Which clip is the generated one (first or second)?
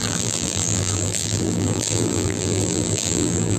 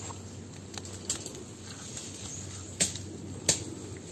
first